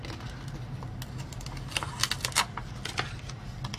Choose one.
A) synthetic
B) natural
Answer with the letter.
B